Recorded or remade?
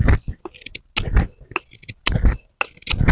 recorded